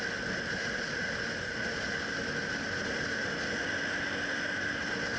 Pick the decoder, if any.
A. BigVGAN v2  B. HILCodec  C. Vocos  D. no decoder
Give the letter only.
D